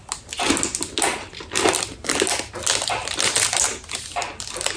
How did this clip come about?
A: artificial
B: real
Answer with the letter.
B